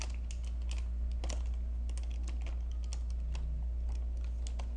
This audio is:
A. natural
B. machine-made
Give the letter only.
A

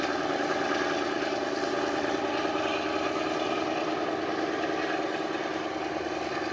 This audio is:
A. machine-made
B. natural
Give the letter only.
B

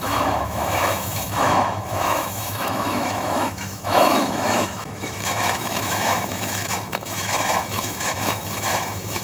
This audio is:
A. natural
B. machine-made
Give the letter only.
B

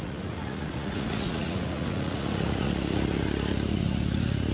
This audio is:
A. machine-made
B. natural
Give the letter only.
A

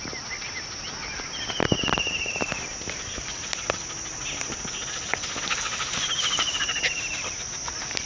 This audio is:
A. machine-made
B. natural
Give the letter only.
B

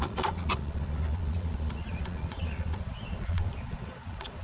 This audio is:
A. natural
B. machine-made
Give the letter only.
B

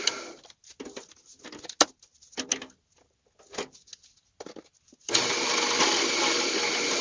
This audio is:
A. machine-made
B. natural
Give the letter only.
B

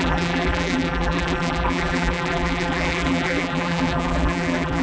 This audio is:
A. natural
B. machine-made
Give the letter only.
B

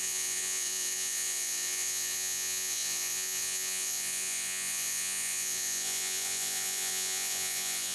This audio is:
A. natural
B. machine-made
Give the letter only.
B